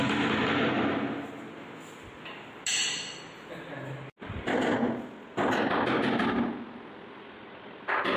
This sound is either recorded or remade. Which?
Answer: recorded